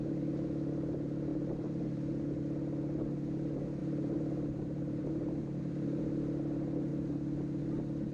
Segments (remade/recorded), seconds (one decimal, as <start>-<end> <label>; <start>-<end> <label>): 0.0-1.3 recorded; 1.3-2.4 remade; 2.4-3.8 recorded; 3.8-6.0 remade; 6.0-8.1 recorded